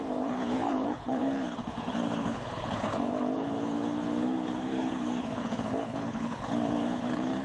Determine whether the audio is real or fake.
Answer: fake